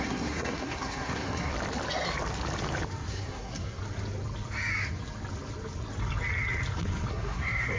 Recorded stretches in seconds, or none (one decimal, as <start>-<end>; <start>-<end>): 1.5-3.1; 3.8-7.1